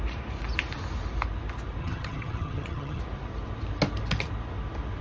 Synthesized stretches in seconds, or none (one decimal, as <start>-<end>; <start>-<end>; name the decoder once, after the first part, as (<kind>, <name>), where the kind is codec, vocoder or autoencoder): 1.8-3.0 (vocoder, HiFi-GAN)